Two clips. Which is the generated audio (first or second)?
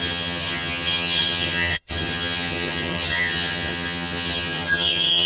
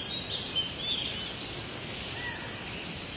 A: first